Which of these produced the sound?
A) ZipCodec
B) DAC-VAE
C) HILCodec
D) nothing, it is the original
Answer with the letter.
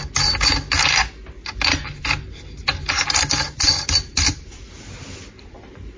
D